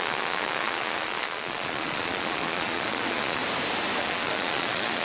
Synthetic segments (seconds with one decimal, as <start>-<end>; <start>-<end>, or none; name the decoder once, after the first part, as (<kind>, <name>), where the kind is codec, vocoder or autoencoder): 0.0-3.4 (vocoder, Vocos); 4.0-5.0